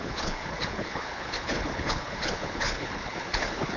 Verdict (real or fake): fake